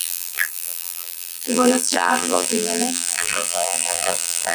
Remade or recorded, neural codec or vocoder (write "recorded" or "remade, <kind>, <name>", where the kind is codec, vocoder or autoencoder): remade, vocoder, BigVGAN v2